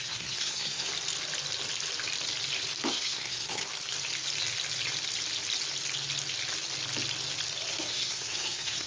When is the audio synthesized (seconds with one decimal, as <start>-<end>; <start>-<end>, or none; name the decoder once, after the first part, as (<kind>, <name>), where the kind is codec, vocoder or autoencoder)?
0.0-0.9 (codec, SNAC); 2.9-3.6; 7.7-8.9